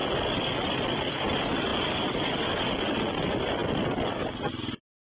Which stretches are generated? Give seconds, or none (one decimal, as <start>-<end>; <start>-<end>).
1.7-2.7